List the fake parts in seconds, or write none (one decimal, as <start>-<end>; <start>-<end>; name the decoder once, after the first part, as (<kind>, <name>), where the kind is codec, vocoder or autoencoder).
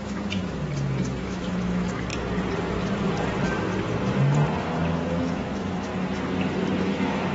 0.0-0.4 (autoencoder, DAC-VAE); 1.2-2.1; 4.6-5.9; 6.8-7.3